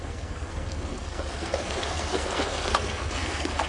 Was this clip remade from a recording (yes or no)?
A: yes